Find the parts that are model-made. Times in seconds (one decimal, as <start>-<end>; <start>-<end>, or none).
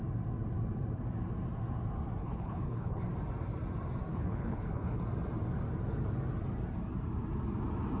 2.2-3.0; 4.1-5.0